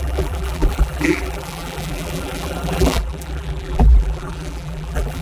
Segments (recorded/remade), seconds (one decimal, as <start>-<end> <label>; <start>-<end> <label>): 0.0-5.2 remade